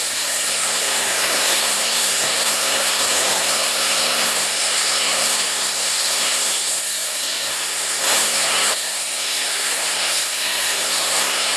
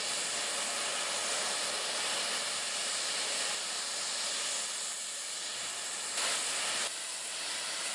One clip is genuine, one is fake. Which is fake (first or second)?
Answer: first